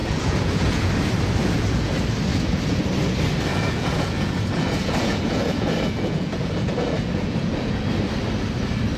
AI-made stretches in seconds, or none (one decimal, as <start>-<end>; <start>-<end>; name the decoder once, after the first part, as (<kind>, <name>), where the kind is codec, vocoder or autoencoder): 0.0-0.9 (vocoder, Vocos); 1.4-1.9; 2.3-2.8; 3.5-7.9